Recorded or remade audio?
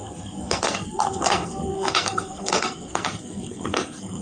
remade